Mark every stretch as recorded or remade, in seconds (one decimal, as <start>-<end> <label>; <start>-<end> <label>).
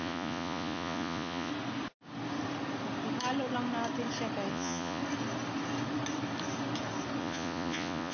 0.0-1.5 remade; 1.5-4.5 recorded; 4.5-5.0 remade; 5.0-7.2 recorded; 7.2-8.1 remade